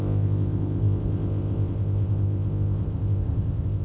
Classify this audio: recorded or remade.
remade